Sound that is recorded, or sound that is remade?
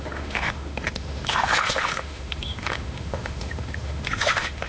remade